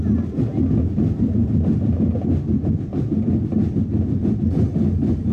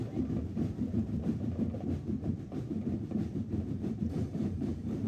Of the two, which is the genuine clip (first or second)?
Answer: first